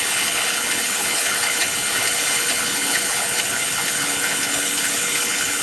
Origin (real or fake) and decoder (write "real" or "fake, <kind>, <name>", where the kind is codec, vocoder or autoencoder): fake, codec, HILCodec